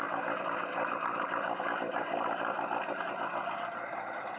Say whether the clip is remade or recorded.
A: recorded